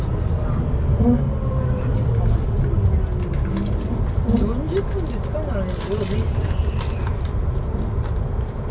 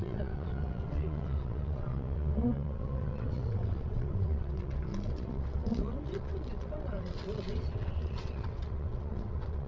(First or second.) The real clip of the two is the first